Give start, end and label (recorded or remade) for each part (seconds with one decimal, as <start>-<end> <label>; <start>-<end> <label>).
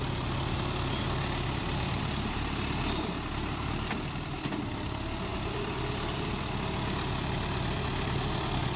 0.0-1.6 recorded; 1.6-3.7 remade; 3.7-5.3 recorded; 5.3-6.4 remade; 6.4-8.8 recorded